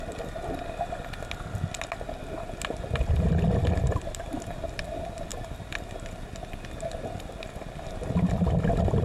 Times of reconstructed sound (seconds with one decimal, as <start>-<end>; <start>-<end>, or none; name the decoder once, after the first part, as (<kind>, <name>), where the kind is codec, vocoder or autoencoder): none